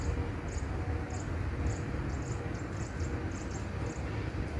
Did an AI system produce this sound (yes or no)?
no